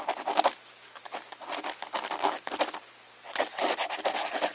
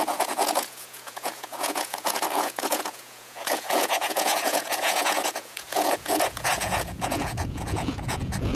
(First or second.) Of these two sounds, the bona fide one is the first